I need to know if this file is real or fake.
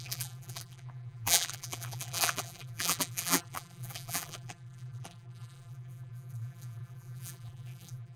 fake